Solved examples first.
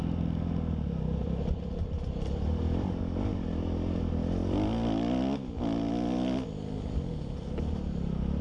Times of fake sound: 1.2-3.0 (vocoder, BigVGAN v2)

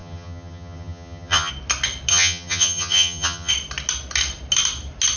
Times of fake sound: 0.0-1.5 (vocoder, HiFi-GAN); 2.1-3.5

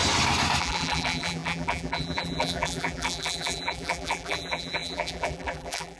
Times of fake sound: 0.6-6.0 (vocoder, BigVGAN v2)